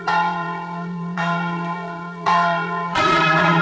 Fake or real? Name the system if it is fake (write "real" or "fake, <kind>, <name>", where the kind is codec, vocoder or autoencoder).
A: fake, vocoder, Vocos